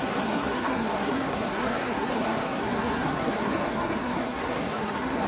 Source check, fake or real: fake